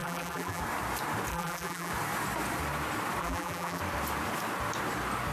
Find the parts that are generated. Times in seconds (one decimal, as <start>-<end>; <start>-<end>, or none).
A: 0.0-0.6; 1.3-1.9; 3.2-3.8